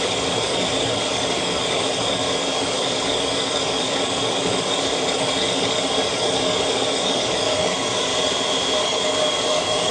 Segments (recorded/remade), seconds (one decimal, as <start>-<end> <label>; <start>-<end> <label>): 0.0-8.1 remade; 8.1-8.8 recorded; 8.8-9.9 remade